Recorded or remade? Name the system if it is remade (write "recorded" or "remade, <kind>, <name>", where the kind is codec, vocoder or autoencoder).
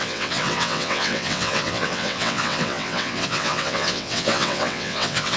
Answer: remade, vocoder, WaveNeXt